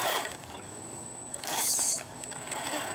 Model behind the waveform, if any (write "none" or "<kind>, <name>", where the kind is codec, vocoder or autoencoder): codec, DAC